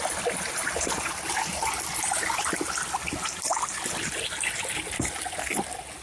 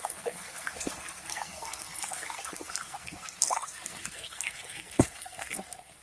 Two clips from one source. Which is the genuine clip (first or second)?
first